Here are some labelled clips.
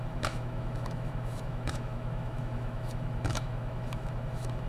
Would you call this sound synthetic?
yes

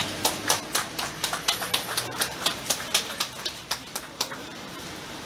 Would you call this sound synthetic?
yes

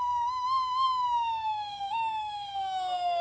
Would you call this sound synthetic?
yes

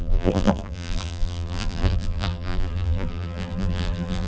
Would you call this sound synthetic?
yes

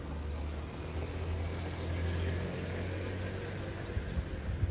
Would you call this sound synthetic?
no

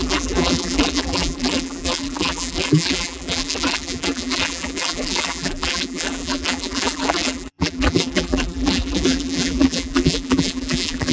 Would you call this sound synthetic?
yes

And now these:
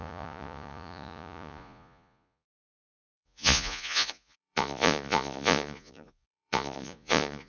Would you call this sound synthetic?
yes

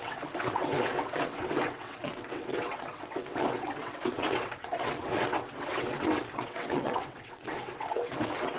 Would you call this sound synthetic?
yes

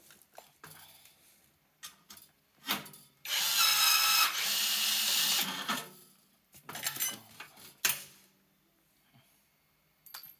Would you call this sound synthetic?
no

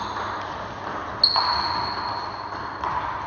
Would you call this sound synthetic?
no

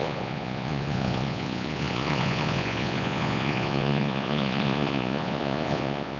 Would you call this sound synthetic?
yes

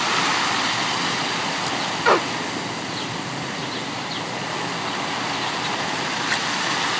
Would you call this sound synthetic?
no